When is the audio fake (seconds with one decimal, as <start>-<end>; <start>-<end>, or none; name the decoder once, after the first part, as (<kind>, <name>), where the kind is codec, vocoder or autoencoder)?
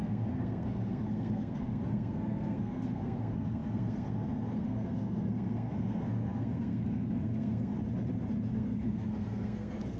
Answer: 0.0-7.7 (codec, SNAC); 8.5-10.0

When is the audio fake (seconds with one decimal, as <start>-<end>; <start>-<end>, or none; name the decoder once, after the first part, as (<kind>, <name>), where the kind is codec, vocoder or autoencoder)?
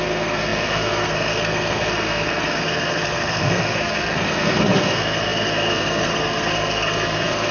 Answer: 0.0-7.5 (codec, SNAC)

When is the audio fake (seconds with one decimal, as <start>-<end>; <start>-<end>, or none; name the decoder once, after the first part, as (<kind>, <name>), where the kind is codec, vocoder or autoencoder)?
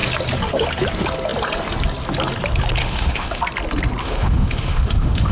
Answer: 2.8-3.4 (autoencoder, DAC-VAE); 4.0-5.3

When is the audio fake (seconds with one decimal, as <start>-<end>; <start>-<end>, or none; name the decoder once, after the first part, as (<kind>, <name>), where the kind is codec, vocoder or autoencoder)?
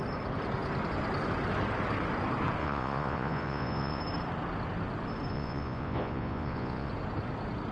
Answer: 2.6-4.0 (vocoder, Vocos); 5.3-6.9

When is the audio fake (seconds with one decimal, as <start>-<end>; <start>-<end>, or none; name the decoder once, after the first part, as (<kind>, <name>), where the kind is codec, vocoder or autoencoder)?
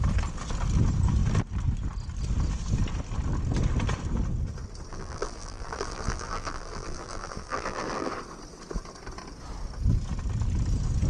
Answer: 4.9-8.1 (vocoder, BigVGAN v2)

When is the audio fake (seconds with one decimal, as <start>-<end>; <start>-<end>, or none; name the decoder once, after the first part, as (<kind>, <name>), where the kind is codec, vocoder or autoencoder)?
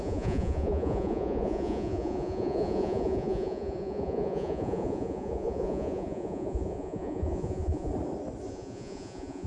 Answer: 0.0-7.9 (vocoder, Vocos); 8.5-9.5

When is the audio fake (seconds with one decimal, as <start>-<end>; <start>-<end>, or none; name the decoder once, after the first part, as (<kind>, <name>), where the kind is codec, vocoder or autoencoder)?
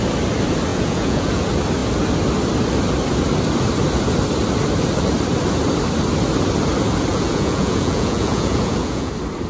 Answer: 0.7-1.4 (vocoder, Vocos); 7.1-9.1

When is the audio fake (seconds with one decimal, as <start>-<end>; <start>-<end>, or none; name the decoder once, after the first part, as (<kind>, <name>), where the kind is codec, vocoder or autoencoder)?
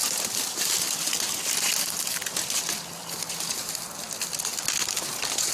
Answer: none